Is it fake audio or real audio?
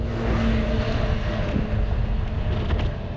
real